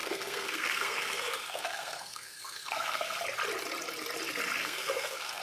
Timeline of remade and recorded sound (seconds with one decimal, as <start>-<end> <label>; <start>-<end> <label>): 0.0-3.2 remade; 3.2-4.6 recorded; 4.6-5.4 remade